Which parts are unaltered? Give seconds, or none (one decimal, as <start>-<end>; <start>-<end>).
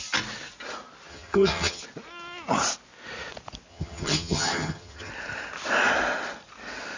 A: 0.0-1.1; 1.8-3.7; 5.1-7.0